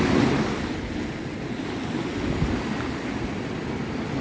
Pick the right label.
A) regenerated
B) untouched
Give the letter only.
B